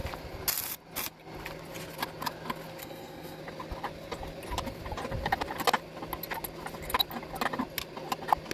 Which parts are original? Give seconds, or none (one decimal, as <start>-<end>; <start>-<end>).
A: 0.0-2.8; 3.4-8.5